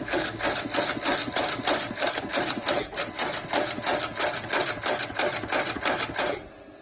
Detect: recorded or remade recorded